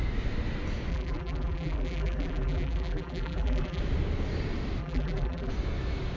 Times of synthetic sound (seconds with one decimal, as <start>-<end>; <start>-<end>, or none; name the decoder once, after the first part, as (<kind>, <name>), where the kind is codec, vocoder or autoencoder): 0.9-3.8 (vocoder, BigVGAN v2); 4.8-5.5

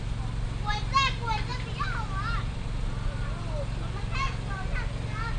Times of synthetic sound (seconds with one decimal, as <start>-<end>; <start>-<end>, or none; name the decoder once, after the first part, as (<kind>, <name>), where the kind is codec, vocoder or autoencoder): 1.5-4.7 (vocoder, BigVGAN v2)

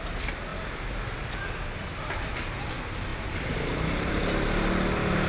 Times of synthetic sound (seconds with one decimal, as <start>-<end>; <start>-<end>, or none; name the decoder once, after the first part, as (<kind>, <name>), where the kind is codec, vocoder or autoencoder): 3.1-4.2 (vocoder, BigVGAN v2)